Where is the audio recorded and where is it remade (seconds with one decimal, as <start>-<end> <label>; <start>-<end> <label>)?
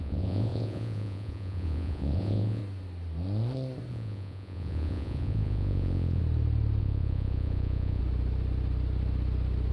0.0-2.6 remade; 2.6-3.9 recorded; 3.9-6.2 remade; 6.2-6.8 recorded; 6.8-8.0 remade; 8.0-9.7 recorded